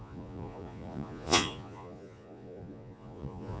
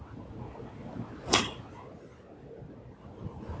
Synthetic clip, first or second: first